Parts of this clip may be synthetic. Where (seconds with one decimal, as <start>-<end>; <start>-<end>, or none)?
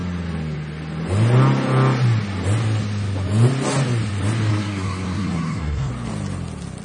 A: 4.5-5.9